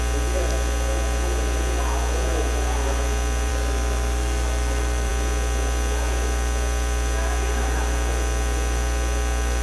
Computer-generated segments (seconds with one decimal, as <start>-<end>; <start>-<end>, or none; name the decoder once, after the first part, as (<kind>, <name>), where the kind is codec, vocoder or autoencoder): 3.5-5.1 (autoencoder, DAC-VAE)